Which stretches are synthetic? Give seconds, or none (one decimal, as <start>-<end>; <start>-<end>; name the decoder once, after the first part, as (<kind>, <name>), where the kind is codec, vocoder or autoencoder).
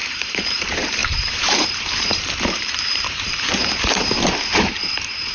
0.0-5.3 (vocoder, BigVGAN v2)